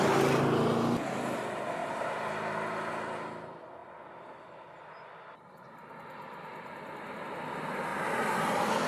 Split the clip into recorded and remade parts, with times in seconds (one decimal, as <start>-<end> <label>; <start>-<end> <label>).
0.0-1.8 recorded; 1.8-2.9 remade; 2.9-3.8 recorded; 3.8-5.9 remade; 5.9-8.9 recorded